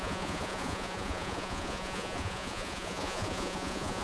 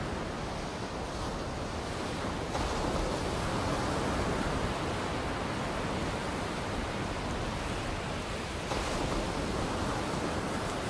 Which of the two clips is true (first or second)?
second